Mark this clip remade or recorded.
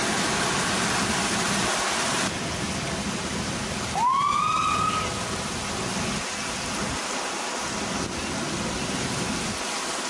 recorded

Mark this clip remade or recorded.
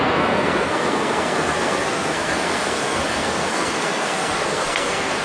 remade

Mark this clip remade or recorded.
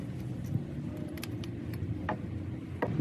recorded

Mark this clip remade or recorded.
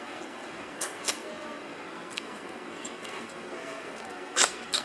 remade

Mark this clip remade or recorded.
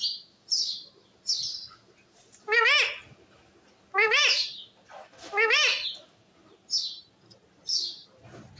recorded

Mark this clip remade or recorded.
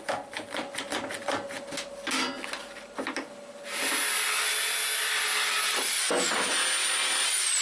recorded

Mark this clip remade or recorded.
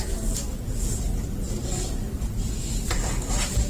recorded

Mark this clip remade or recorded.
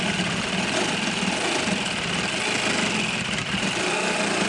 recorded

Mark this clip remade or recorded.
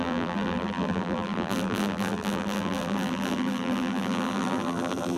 remade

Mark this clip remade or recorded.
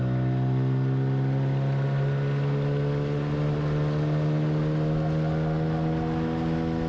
recorded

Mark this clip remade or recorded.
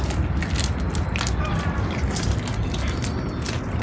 recorded